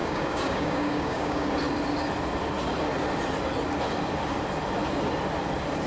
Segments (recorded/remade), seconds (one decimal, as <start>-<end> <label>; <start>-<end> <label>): 0.0-1.5 remade; 1.5-5.9 recorded